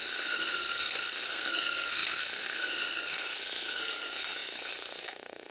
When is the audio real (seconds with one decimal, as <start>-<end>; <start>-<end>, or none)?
none